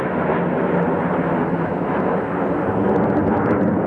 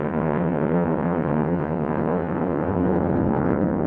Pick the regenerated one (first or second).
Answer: second